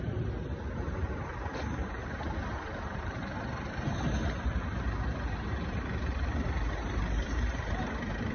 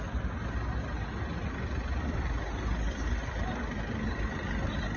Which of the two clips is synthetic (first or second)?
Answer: first